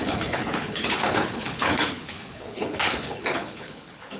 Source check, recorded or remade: remade